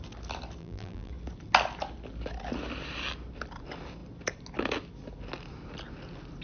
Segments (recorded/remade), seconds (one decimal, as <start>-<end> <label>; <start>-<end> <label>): 0.0-0.6 recorded; 0.6-1.1 remade; 1.1-6.4 recorded